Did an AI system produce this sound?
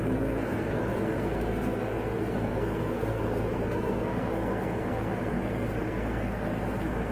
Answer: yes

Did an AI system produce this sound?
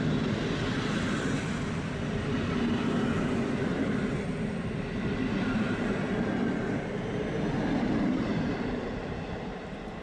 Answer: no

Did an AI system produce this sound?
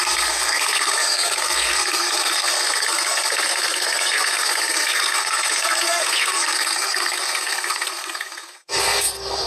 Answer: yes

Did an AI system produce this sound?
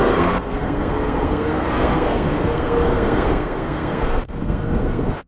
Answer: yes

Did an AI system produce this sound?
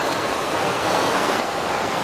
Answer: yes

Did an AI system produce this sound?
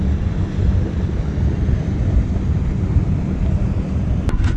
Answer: no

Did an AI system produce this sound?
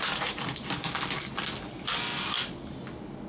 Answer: no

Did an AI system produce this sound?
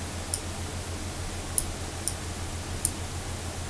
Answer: no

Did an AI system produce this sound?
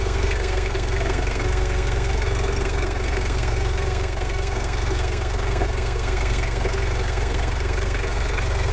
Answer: yes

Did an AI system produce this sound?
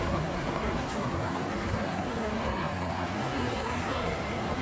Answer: yes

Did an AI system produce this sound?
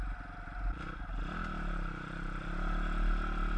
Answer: no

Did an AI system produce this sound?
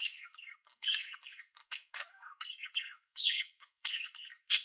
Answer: yes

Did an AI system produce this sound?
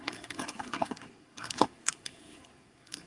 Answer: yes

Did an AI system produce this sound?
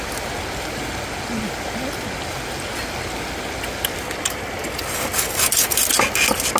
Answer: no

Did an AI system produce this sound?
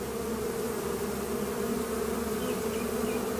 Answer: no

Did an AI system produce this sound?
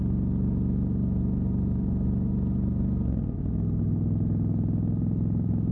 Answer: no